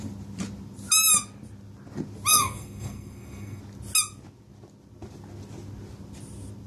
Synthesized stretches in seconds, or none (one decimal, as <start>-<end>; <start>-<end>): 2.3-3.6